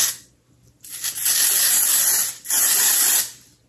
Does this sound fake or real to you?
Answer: real